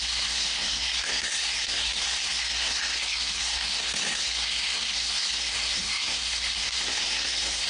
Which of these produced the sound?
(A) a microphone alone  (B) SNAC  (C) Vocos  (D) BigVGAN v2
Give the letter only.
B